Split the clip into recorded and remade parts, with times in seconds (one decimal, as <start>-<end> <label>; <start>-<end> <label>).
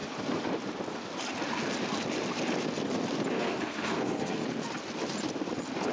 0.0-3.3 recorded; 3.3-4.4 remade; 4.4-5.9 recorded